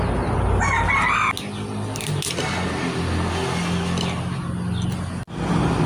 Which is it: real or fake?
real